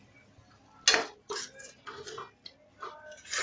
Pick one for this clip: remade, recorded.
recorded